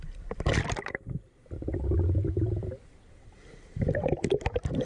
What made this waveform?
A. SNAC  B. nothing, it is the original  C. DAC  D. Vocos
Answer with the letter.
B